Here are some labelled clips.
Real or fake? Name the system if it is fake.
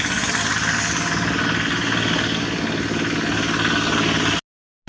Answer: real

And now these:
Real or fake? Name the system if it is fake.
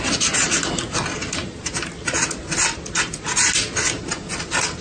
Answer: real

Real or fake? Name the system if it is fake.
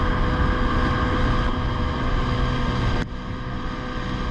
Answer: real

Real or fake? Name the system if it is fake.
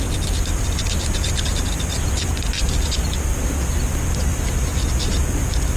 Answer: real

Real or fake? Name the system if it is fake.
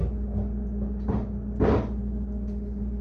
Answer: real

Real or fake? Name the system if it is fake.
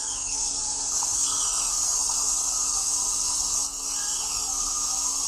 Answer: fake, codec, SNAC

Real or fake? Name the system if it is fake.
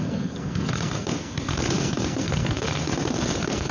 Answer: fake, codec, SNAC